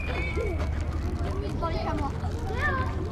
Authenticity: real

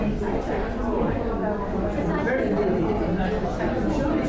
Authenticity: real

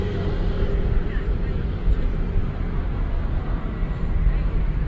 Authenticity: fake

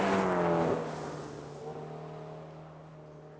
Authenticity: real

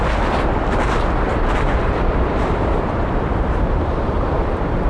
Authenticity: fake